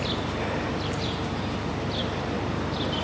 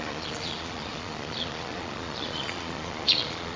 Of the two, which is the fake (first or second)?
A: second